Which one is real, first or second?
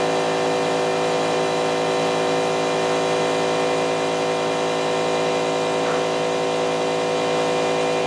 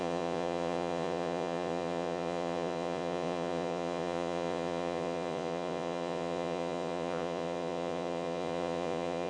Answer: first